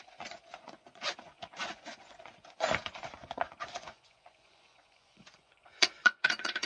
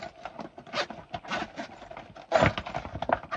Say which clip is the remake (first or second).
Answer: first